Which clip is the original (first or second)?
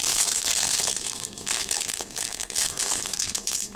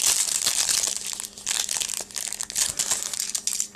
second